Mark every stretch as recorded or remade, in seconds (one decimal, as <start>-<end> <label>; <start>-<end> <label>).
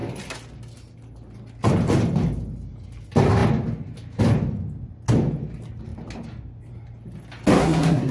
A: 0.0-7.5 recorded; 7.5-8.1 remade